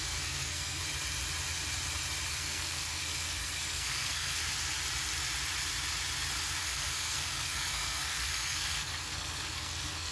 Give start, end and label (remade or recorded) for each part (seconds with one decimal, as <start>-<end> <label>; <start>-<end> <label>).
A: 0.0-0.8 remade; 0.8-2.3 recorded; 2.3-4.4 remade; 4.4-6.6 recorded; 6.6-10.1 remade